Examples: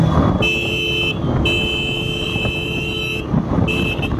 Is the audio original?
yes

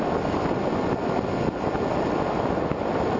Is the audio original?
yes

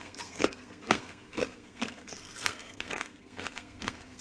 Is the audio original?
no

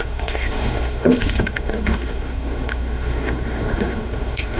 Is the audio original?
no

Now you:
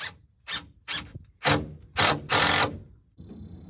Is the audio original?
yes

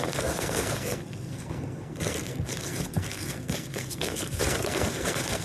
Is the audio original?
no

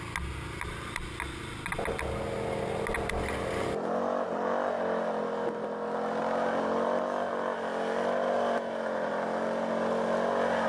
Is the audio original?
yes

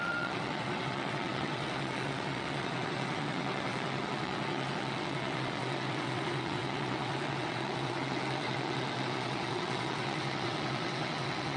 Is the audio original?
no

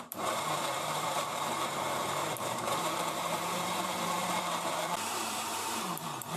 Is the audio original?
no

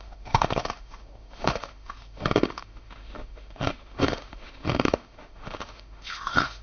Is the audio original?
no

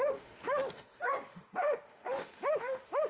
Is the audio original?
no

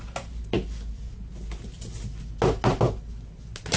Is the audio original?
yes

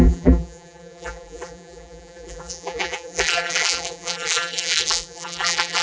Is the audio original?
no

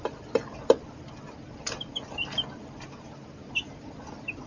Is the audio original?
yes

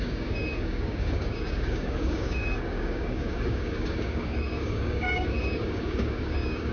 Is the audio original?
no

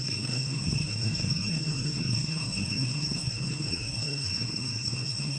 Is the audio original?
no